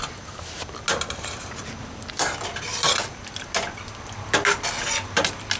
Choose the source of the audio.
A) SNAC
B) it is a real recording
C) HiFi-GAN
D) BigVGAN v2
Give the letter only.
B